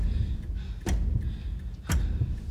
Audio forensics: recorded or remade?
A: recorded